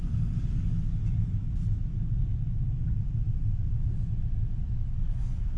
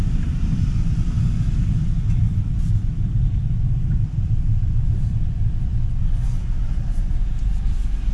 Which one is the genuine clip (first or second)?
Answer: first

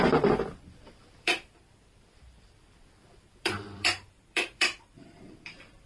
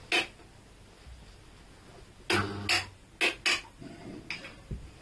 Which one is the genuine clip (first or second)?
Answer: second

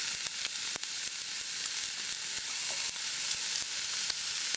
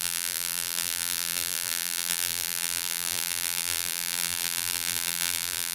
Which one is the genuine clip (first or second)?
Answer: first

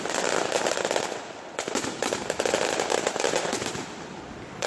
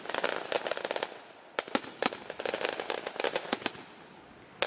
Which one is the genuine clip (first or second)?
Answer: second